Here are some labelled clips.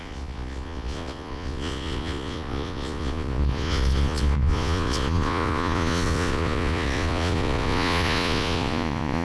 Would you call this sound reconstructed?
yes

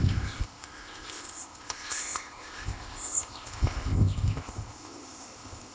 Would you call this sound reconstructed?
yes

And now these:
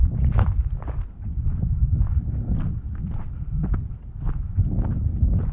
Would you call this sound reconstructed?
no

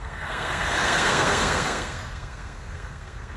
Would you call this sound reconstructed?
yes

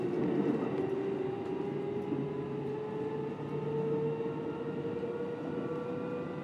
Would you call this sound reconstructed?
no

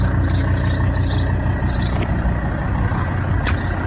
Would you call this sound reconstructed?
no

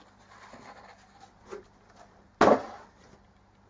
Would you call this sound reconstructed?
no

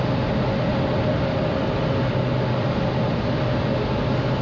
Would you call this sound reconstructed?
no